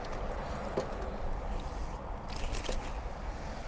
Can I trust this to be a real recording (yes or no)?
yes